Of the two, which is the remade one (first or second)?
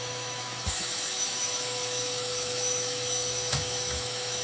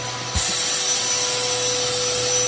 first